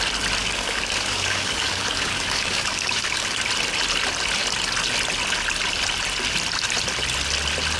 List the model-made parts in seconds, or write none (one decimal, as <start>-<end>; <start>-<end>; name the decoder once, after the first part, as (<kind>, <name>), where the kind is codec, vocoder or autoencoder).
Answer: 0.4-3.4 (codec, DAC)